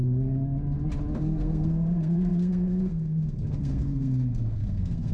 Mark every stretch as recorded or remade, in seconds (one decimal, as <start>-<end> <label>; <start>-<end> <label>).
0.0-1.2 recorded; 1.2-5.1 remade